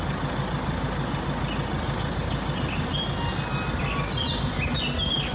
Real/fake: real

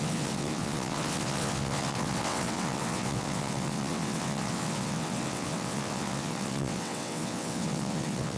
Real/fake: fake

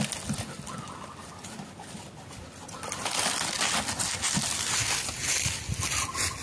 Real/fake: real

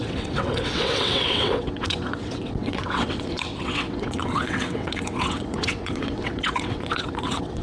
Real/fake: fake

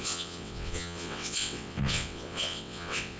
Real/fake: fake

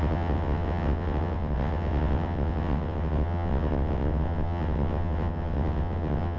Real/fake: fake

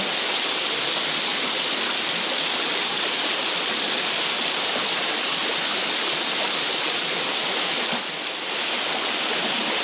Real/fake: real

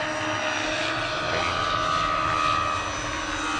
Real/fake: real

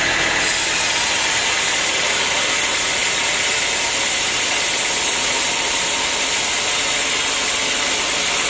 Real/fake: real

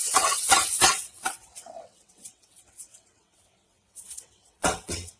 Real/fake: fake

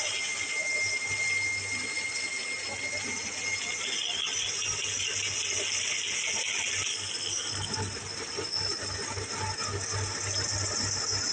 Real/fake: real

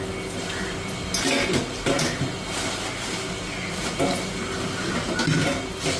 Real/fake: real